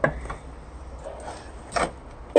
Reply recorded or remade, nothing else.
recorded